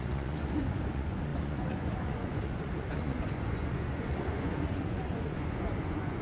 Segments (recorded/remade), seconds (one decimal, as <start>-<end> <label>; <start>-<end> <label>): 0.0-6.2 remade